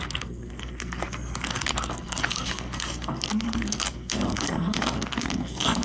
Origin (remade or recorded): remade